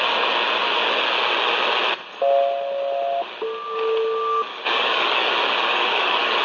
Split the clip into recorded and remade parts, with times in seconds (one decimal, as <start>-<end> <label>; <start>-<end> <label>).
0.0-4.5 recorded; 4.5-5.3 remade; 5.3-5.7 recorded; 5.7-6.4 remade